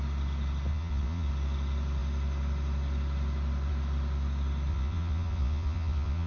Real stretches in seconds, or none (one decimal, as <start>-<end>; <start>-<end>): 0.0-0.7; 1.3-4.7

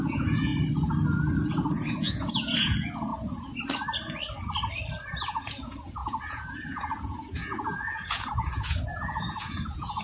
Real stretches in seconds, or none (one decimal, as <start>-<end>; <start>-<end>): 0.5-1.7; 3.1-5.2

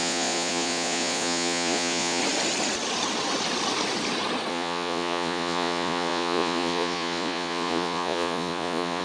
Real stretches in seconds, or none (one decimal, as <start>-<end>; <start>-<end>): 2.2-4.5

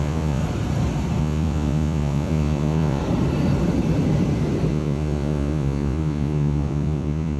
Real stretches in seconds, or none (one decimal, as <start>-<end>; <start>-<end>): 0.4-1.2; 3.0-4.7